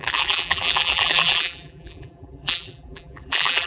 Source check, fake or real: fake